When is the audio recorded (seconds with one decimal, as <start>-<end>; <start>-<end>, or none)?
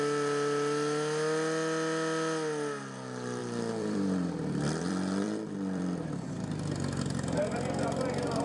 0.0-3.4; 6.3-8.4